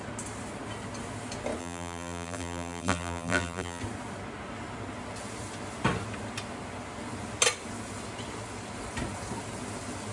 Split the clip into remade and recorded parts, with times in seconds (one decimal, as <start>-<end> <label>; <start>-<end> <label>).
0.0-1.6 recorded; 1.6-3.8 remade; 3.8-10.1 recorded